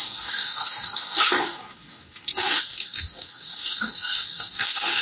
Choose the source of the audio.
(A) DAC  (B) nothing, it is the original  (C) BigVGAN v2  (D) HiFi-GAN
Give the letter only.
A